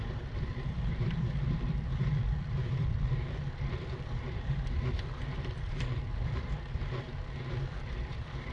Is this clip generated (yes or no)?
yes